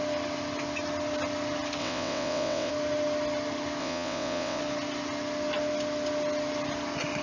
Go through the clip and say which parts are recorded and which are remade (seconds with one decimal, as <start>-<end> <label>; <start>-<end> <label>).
0.0-1.8 recorded; 1.8-2.7 remade; 2.7-3.8 recorded; 3.8-4.6 remade; 4.6-7.2 recorded